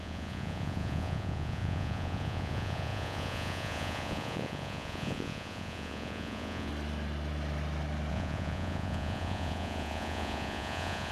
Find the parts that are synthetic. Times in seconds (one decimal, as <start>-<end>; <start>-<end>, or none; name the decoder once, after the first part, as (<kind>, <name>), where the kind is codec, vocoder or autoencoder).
0.0-6.7 (vocoder, Vocos); 8.1-11.1